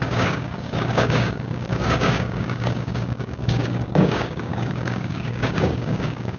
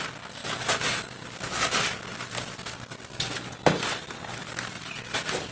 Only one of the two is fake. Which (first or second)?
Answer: first